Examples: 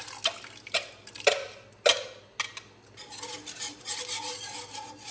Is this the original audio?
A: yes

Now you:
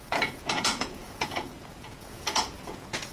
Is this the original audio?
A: no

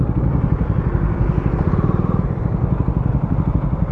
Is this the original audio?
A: yes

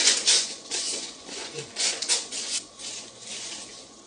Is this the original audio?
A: no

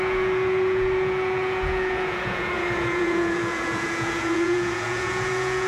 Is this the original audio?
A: no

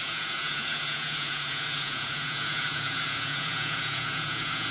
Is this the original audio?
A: no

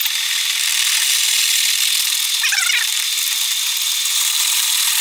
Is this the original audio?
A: yes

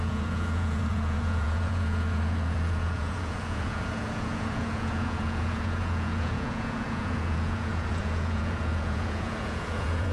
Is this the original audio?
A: no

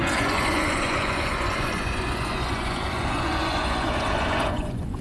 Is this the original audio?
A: no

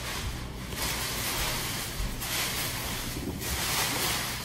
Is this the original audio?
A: yes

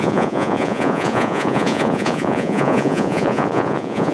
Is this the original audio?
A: no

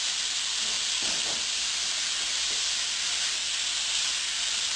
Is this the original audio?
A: yes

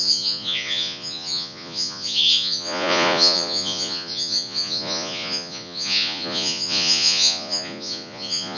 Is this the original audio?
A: no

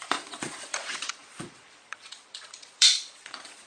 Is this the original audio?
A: no